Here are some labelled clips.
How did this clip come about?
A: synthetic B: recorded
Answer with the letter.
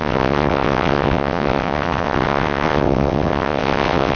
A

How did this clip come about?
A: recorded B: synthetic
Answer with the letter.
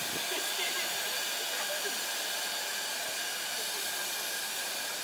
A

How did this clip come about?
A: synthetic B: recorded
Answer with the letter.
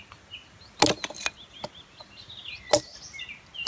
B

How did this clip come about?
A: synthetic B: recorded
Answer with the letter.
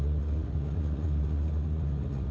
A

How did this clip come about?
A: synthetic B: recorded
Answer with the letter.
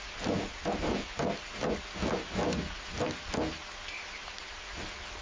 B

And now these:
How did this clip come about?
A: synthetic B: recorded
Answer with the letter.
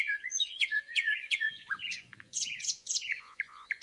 A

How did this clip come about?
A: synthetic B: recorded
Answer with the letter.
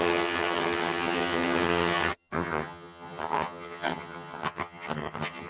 A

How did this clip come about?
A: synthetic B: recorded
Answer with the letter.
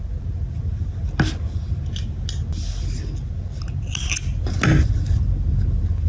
B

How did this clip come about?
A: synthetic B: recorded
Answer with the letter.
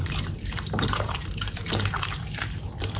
A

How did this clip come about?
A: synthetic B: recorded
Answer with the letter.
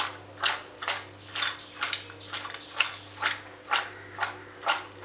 B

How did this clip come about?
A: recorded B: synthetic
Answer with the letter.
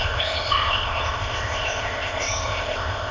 B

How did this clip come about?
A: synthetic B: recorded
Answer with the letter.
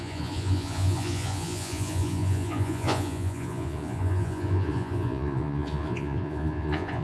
A